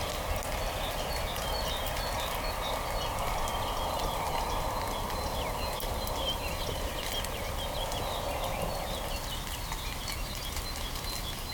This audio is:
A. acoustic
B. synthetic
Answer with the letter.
A